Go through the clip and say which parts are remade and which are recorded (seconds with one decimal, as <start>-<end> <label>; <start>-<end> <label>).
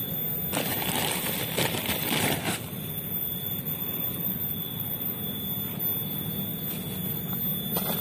0.0-1.0 recorded; 1.0-5.1 remade; 5.1-8.0 recorded